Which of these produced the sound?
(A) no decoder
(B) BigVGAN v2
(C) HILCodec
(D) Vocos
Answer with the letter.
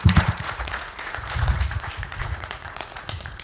D